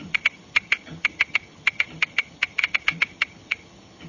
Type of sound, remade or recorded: remade